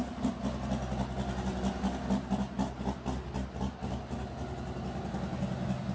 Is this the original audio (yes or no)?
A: yes